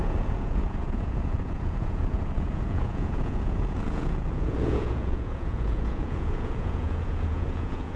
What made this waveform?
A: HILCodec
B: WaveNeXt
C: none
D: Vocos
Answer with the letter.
D